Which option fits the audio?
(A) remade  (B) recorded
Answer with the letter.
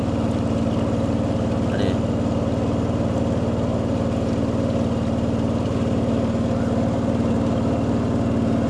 B